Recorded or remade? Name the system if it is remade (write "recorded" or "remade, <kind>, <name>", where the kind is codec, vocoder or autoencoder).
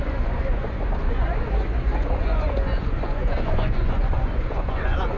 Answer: remade, vocoder, Vocos